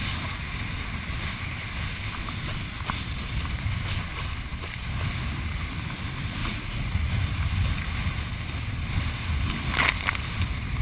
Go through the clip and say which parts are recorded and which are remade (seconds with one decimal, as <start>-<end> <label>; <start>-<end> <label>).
0.0-6.4 recorded; 6.4-7.2 remade; 7.2-10.8 recorded